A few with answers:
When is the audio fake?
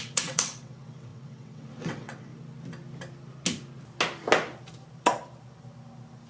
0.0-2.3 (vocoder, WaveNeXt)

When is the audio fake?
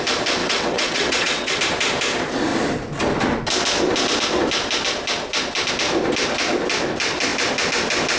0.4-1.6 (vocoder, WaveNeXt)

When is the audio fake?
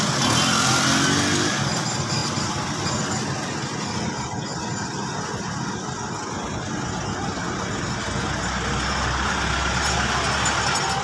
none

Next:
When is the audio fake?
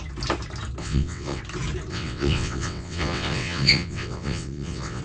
0.8-1.4 (vocoder, WaveNeXt); 1.9-5.0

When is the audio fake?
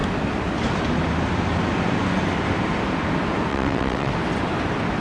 3.5-4.1 (vocoder, WaveNeXt)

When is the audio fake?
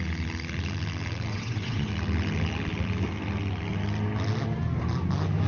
1.3-1.9 (vocoder, WaveNeXt)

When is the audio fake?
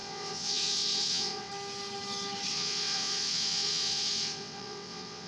0.0-1.5 (vocoder, WaveNeXt); 2.5-5.3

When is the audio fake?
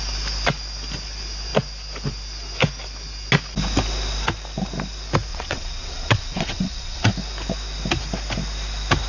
5.3-7.1 (vocoder, WaveNeXt)